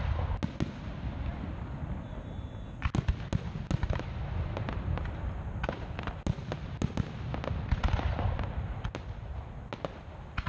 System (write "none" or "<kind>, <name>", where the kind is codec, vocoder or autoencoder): none